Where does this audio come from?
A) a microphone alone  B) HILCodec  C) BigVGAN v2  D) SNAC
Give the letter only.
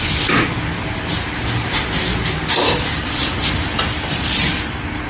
A